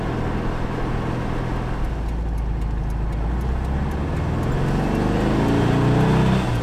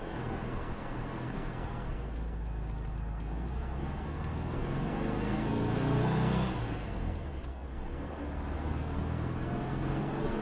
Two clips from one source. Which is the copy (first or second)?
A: second